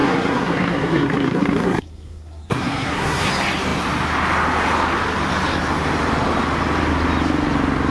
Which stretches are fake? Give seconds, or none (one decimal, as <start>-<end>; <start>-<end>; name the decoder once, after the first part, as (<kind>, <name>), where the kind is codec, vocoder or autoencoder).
0.0-3.3 (codec, SNAC)

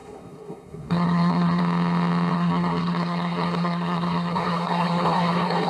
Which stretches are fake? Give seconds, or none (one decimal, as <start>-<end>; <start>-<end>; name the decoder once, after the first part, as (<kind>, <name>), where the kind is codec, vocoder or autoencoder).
0.0-1.6 (codec, SNAC); 2.3-5.7

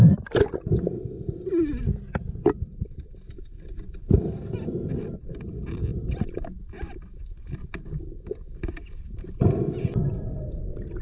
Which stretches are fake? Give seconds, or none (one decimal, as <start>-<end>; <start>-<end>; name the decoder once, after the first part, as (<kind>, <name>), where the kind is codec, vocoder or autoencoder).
none

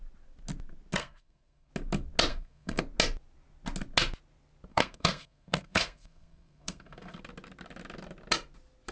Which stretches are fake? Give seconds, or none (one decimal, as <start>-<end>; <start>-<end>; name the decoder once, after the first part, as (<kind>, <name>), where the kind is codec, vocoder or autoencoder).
1.0-1.7 (codec, SNAC); 2.3-2.8; 4.7-7.2